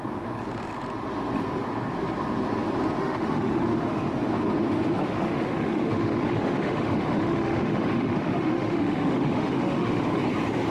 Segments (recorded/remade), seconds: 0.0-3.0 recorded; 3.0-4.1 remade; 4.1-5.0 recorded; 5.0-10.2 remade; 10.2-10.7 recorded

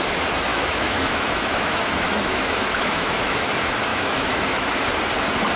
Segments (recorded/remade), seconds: 0.0-0.5 recorded; 0.5-3.2 remade; 3.2-3.9 recorded; 3.9-4.8 remade; 4.8-5.6 recorded

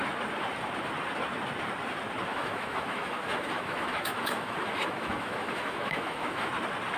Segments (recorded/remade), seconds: 0.0-2.3 recorded; 2.3-6.5 remade; 6.5-7.0 recorded

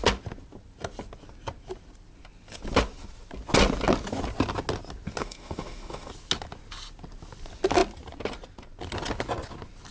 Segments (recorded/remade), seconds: 0.0-5.2 recorded; 5.2-6.1 remade; 6.1-9.9 recorded

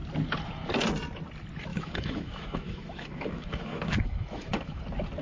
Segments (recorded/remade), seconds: 0.0-1.7 recorded; 1.7-4.8 remade; 4.8-5.2 recorded

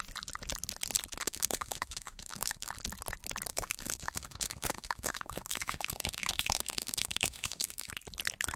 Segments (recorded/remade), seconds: 0.0-1.2 recorded; 1.2-2.7 remade; 2.7-3.5 recorded; 3.5-7.9 remade; 7.9-8.6 recorded

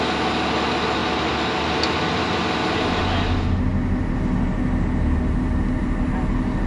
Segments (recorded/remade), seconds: 0.0-6.7 recorded